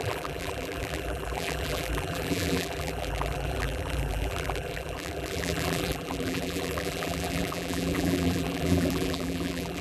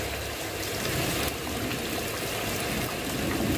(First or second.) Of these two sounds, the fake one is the first